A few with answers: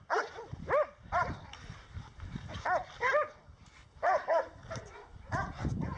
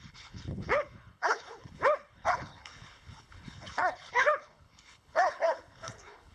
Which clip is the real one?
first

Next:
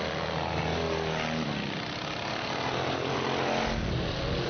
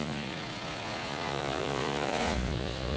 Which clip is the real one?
first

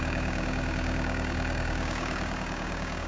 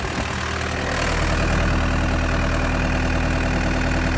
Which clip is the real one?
second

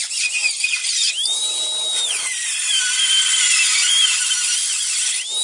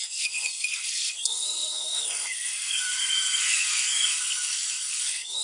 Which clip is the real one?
first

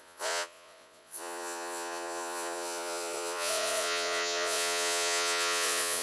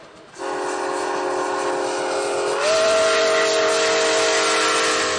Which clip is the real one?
second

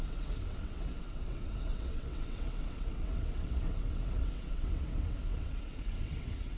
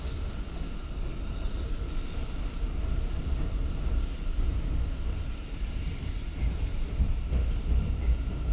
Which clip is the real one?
second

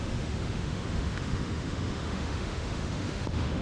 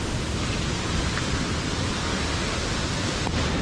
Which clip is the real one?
second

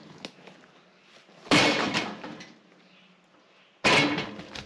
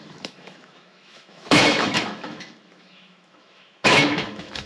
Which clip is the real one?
first